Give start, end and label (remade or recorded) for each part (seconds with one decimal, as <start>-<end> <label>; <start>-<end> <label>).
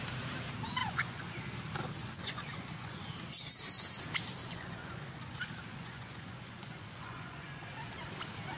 0.0-0.8 recorded; 0.8-1.4 remade; 1.4-2.0 recorded; 2.0-3.1 remade; 3.1-4.4 recorded; 4.4-7.9 remade; 7.9-8.6 recorded